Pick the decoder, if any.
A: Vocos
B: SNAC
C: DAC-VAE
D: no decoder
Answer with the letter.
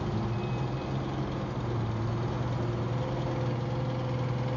D